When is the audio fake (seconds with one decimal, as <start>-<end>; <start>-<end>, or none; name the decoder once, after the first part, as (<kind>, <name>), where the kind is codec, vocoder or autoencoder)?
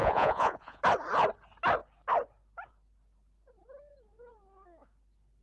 0.0-0.8 (vocoder, Vocos)